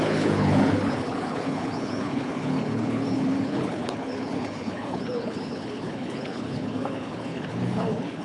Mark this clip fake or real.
fake